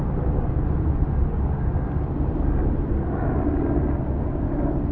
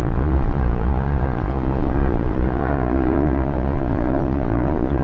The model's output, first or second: second